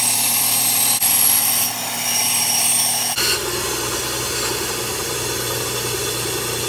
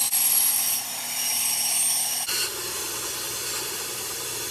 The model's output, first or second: second